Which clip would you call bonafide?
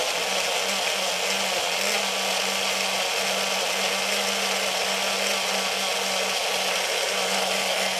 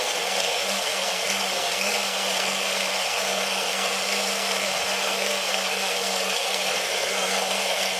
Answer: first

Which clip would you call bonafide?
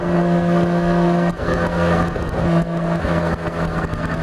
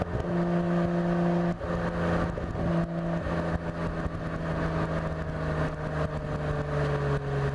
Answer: second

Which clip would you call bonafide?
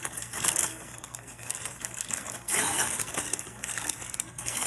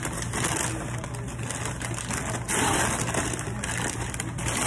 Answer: second